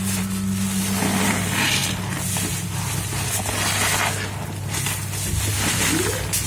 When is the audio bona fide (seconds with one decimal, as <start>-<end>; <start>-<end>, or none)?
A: 0.0-6.5